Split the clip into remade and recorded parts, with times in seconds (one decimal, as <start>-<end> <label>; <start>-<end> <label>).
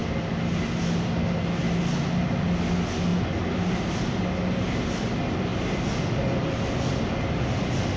0.0-8.0 recorded